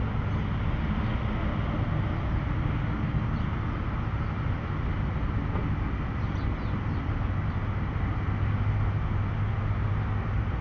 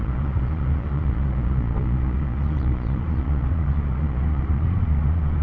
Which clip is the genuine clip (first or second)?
first